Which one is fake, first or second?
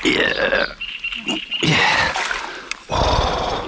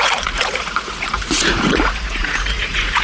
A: second